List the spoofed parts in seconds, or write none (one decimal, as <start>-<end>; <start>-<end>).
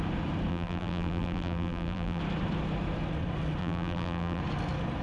0.5-2.2; 3.6-4.4